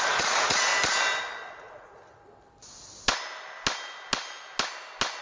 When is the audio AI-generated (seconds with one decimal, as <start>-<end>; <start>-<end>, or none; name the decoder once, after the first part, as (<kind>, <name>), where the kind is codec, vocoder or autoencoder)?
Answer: 0.0-0.7 (vocoder, Vocos); 1.2-2.0